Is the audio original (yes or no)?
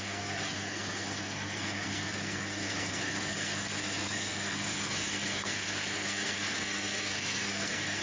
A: no